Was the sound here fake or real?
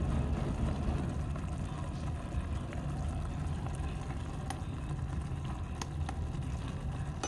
real